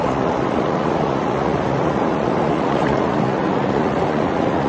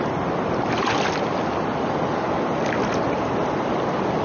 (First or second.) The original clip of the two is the second